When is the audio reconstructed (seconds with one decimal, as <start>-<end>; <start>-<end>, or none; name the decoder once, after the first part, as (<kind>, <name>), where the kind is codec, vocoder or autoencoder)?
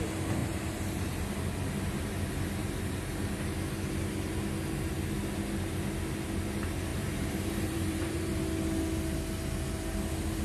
0.4-2.1 (vocoder, BigVGAN v2); 2.6-3.2; 6.9-8.4